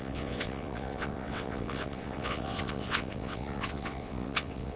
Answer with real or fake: fake